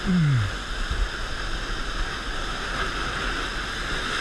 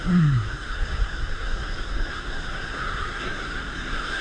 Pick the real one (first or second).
first